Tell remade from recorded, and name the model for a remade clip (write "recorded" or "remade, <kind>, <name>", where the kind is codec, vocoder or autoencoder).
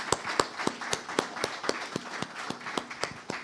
recorded